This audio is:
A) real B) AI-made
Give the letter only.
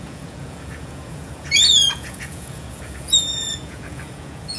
B